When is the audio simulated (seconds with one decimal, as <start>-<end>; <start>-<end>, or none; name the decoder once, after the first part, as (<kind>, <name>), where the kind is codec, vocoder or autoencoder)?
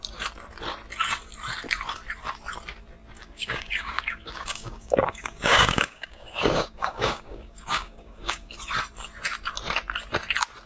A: 3.2-8.5 (codec, DAC)